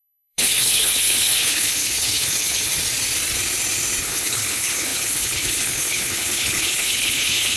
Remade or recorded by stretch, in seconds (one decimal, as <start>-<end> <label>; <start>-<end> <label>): 0.0-2.7 remade; 2.7-4.0 recorded; 4.0-7.6 remade